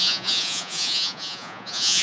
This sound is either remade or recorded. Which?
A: remade